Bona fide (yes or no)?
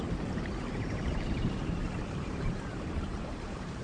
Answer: no